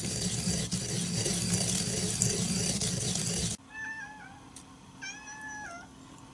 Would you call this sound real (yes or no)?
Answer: yes